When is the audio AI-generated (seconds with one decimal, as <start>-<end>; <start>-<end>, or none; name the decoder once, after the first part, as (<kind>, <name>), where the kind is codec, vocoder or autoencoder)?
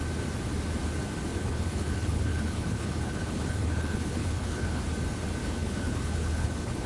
1.3-4.8 (codec, HILCodec); 5.4-6.9